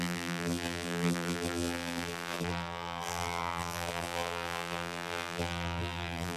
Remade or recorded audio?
remade